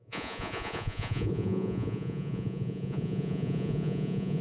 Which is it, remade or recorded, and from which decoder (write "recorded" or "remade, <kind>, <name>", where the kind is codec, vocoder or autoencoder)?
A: remade, vocoder, Vocos